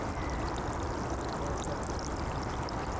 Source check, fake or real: real